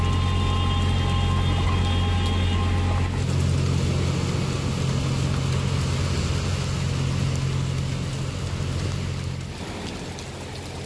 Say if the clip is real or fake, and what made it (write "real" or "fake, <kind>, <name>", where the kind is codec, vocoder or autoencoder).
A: real